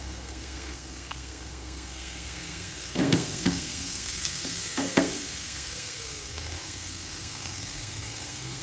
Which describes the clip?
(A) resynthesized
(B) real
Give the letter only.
A